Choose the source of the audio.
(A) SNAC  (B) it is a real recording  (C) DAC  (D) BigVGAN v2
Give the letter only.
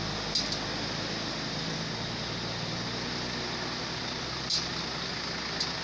B